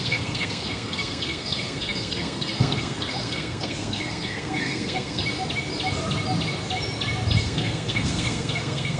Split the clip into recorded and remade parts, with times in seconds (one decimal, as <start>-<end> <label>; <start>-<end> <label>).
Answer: 0.0-5.2 remade; 5.2-7.4 recorded; 7.4-9.0 remade